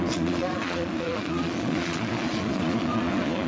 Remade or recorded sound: remade